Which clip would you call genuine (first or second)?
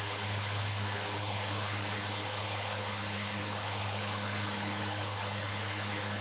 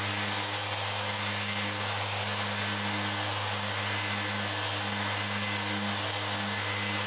second